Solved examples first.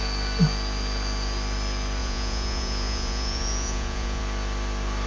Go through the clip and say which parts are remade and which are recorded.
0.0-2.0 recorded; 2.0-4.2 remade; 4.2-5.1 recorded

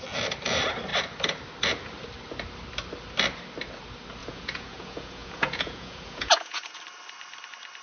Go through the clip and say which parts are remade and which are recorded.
0.0-4.2 recorded; 4.2-6.8 remade; 6.8-7.8 recorded